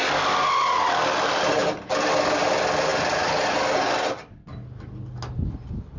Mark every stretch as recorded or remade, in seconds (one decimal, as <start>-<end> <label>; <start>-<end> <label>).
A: 0.0-6.0 recorded